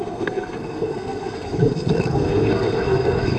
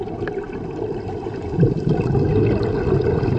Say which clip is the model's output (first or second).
first